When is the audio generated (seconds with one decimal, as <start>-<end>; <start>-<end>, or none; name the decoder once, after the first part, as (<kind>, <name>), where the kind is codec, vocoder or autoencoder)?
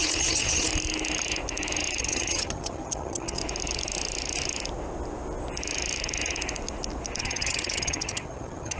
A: 0.0-0.7 (vocoder, HiFi-GAN); 2.0-3.4; 7.2-8.8